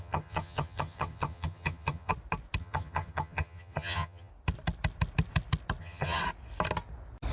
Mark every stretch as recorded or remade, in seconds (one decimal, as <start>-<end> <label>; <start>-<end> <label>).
0.0-2.1 remade; 2.1-2.6 recorded; 2.6-4.3 remade; 4.3-5.8 recorded; 5.8-6.2 remade; 6.2-7.3 recorded